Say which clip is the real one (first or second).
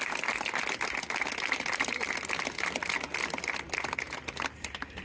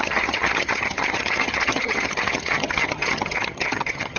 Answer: first